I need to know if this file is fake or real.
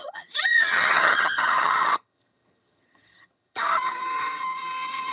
fake